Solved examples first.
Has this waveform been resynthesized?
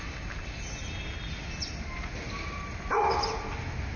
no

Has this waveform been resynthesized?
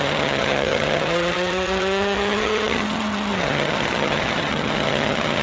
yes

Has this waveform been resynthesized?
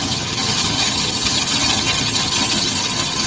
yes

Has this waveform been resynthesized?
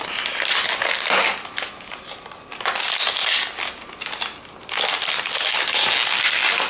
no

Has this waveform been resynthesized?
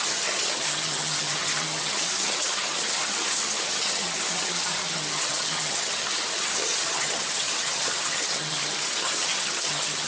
yes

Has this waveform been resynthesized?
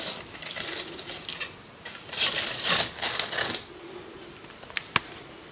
no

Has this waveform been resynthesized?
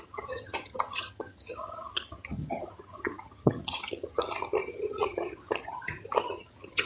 yes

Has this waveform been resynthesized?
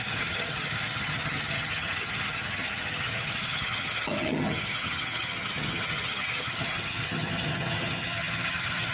yes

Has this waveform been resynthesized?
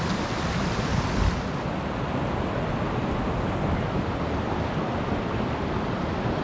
no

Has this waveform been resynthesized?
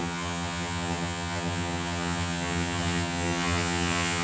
yes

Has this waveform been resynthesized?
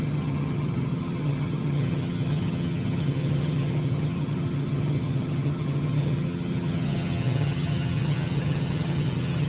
yes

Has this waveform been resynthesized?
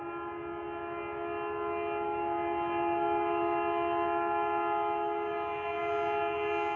no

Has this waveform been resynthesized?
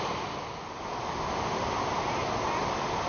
no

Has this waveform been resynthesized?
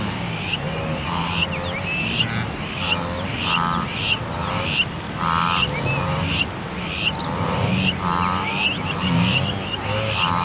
no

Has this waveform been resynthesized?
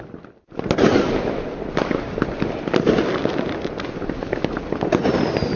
no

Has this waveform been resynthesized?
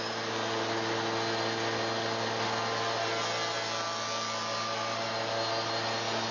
no